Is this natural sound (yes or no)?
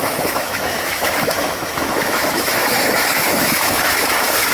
no